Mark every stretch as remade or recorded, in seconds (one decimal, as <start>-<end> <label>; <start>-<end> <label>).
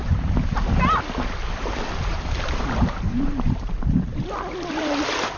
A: 0.0-0.5 remade; 0.5-2.1 recorded; 2.1-4.2 remade; 4.2-5.4 recorded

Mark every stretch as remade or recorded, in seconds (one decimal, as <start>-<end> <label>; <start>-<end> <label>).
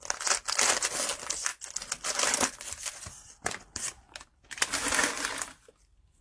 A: 0.0-1.5 recorded; 1.5-3.8 remade; 3.8-6.2 recorded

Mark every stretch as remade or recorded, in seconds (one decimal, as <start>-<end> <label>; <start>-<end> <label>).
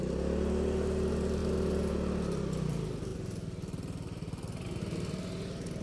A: 0.0-5.8 recorded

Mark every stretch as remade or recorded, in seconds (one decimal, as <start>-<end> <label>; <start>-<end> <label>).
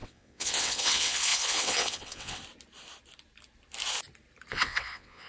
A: 0.0-2.4 remade; 2.4-4.5 recorded; 4.5-5.3 remade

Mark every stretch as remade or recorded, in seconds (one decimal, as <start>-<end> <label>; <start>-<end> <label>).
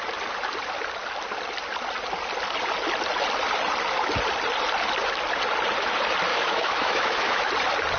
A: 0.0-6.3 recorded; 6.3-7.5 remade; 7.5-8.0 recorded